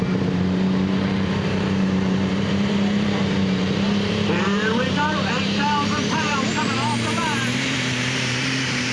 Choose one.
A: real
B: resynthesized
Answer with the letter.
B